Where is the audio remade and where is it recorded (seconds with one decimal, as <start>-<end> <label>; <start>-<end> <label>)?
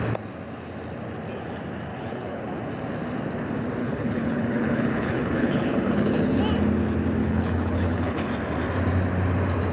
0.0-1.9 recorded; 1.9-2.6 remade; 2.6-3.8 recorded; 3.8-6.4 remade; 6.4-7.2 recorded; 7.2-8.3 remade; 8.3-9.7 recorded